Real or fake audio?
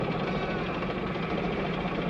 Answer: real